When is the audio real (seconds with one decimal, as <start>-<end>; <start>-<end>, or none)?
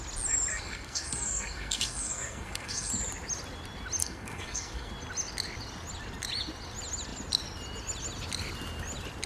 0.0-0.5; 2.9-4.0; 4.9-9.3